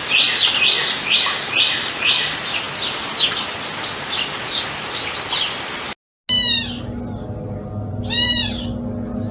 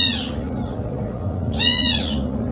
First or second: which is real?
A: first